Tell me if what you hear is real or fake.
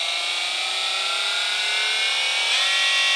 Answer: real